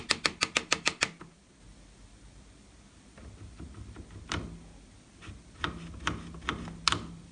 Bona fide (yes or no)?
yes